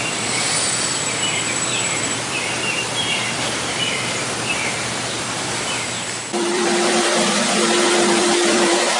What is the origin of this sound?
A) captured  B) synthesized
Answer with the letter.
B